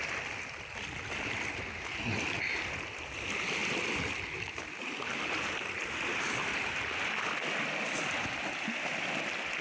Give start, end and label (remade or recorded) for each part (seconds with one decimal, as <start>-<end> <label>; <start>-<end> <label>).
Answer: 0.0-9.6 recorded